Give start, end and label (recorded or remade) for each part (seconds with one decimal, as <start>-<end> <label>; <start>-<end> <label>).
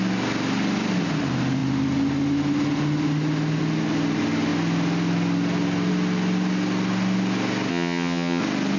0.0-7.7 recorded; 7.7-8.4 remade; 8.4-8.8 recorded